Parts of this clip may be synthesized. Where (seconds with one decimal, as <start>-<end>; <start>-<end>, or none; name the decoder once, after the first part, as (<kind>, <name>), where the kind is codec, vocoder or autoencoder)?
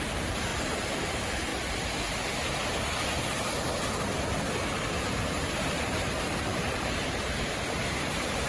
0.0-1.5 (vocoder, BigVGAN v2); 5.6-8.5